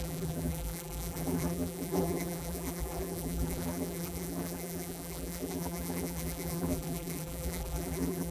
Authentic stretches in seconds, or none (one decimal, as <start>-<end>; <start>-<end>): none